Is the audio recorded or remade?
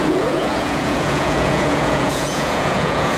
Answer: remade